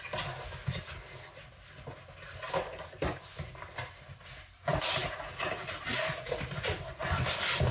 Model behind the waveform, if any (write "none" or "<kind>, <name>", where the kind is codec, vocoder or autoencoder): none